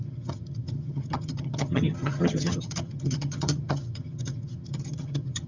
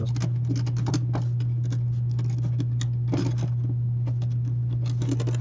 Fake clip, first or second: first